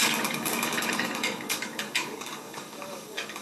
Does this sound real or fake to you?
fake